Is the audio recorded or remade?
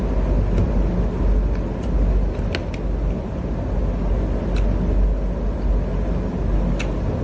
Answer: recorded